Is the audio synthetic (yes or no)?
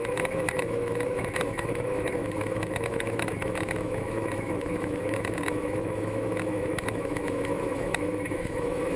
yes